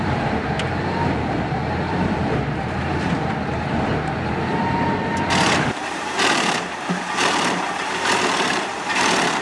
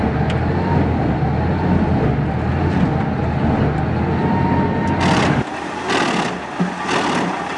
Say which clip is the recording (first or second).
second